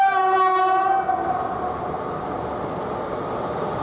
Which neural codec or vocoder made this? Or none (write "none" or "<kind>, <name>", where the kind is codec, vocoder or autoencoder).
none